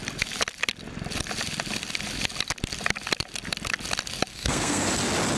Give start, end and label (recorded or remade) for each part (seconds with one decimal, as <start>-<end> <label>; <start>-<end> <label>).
0.0-4.3 recorded; 4.3-4.9 remade; 4.9-5.4 recorded